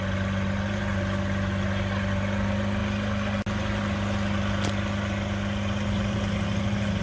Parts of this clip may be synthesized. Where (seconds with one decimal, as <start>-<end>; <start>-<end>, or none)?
none